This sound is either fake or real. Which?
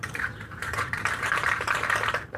fake